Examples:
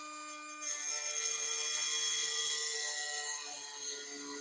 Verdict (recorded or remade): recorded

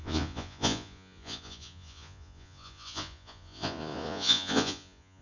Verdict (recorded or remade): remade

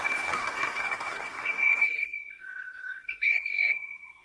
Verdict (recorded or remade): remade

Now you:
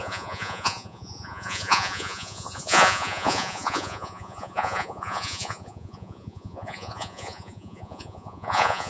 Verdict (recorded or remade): remade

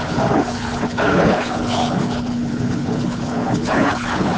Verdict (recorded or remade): remade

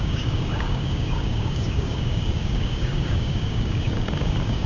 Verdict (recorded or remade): remade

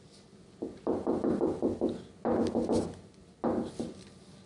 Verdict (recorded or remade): recorded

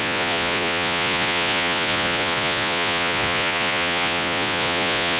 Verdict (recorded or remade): remade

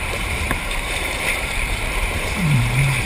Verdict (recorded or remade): remade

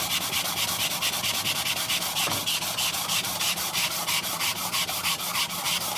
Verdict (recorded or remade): recorded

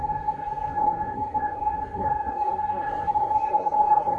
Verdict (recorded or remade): remade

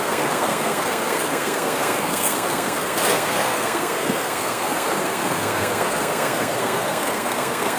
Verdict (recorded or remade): remade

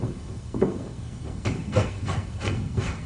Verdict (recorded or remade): remade